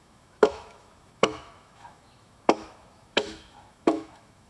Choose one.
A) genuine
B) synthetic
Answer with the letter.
B